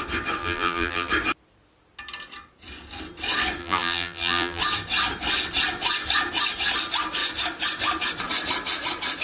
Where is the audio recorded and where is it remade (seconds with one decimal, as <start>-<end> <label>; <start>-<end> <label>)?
0.0-0.4 recorded; 0.4-1.1 remade; 1.1-3.6 recorded; 3.6-4.6 remade; 4.6-9.2 recorded